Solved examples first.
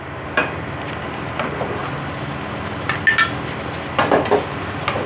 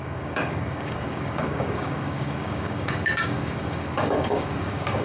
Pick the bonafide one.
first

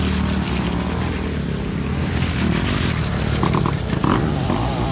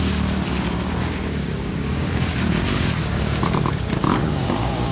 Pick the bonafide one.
first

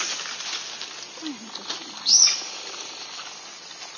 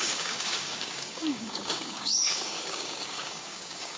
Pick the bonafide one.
first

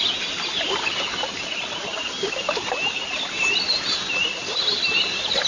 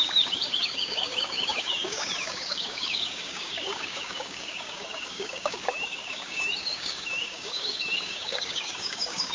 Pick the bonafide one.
first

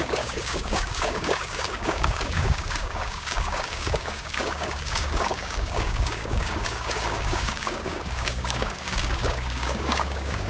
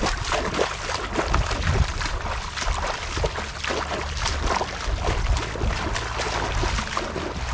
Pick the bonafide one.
second